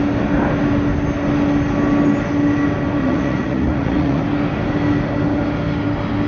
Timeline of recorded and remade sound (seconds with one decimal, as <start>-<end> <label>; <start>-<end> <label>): 0.0-3.0 recorded; 3.0-4.2 remade; 4.2-6.3 recorded